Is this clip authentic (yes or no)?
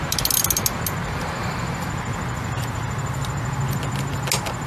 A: yes